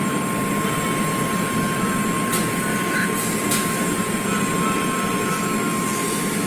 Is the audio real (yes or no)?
yes